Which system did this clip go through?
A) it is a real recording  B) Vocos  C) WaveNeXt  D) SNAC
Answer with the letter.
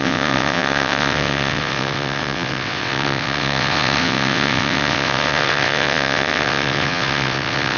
C